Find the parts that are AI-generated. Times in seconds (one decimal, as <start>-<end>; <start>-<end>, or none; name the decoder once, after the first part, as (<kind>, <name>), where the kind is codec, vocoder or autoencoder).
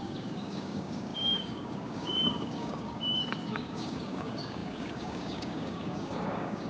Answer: 0.0-6.7 (codec, DAC)